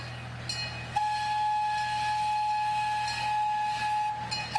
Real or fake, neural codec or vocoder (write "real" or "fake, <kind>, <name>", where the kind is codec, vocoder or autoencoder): real